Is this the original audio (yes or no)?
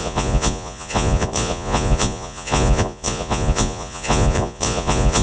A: no